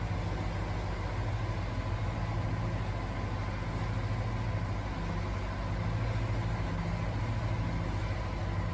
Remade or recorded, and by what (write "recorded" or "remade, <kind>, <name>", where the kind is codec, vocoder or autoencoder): recorded